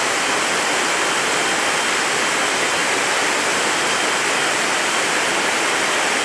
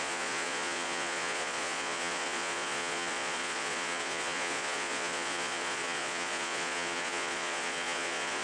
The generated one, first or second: second